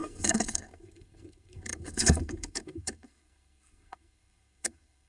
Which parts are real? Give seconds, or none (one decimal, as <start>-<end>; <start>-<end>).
none